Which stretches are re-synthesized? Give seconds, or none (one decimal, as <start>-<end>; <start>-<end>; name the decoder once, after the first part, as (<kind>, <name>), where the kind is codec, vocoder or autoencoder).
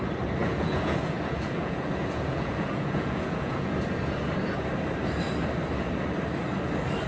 0.4-3.7 (vocoder, Vocos)